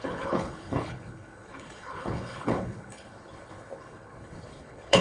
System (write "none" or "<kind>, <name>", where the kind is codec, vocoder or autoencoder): codec, HILCodec